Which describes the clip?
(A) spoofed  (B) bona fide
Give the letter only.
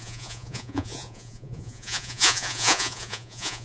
A